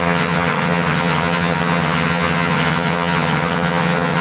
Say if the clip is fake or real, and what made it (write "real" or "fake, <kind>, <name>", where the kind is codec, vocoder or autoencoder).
fake, vocoder, HiFi-GAN